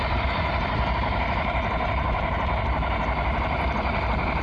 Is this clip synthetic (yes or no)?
yes